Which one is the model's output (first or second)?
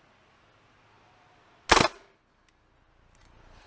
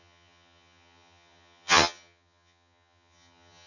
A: second